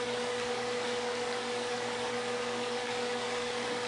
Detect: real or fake fake